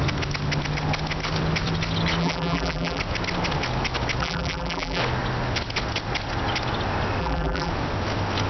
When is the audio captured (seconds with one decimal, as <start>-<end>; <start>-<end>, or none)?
0.0-2.2; 3.0-4.2; 5.0-7.2; 7.7-8.5